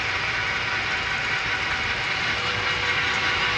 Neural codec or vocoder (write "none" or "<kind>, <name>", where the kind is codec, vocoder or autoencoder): none